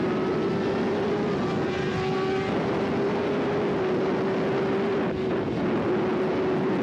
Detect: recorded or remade recorded